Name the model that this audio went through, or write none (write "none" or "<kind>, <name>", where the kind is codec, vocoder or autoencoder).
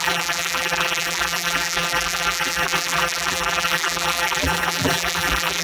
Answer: vocoder, BigVGAN v2